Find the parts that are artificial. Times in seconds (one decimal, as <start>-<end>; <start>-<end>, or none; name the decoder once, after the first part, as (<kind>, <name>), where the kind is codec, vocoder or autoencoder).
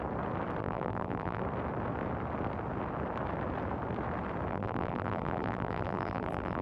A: 0.6-1.4 (vocoder, BigVGAN v2); 4.5-6.6